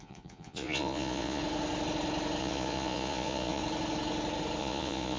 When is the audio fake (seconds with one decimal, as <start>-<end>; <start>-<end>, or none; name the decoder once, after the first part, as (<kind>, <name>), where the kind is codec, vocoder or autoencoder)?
0.0-1.4 (vocoder, Vocos); 2.4-3.6; 4.6-5.2

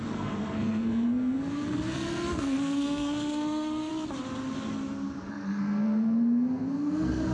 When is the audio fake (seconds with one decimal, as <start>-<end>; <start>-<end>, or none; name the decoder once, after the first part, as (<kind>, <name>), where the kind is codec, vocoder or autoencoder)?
0.0-3.9 (codec, SNAC); 5.3-7.3

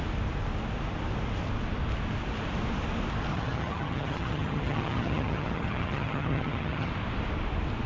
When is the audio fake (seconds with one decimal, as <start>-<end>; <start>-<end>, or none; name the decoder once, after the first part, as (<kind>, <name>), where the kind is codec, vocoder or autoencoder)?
3.3-6.9 (vocoder, HiFi-GAN)

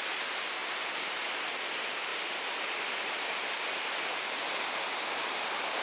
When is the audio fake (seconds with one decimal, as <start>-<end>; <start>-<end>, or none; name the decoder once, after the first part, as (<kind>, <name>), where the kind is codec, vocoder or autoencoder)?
none